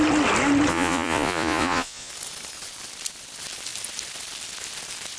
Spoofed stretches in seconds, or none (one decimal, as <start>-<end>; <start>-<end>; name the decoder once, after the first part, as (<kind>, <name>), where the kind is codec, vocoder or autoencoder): 0.7-2.1 (vocoder, Vocos)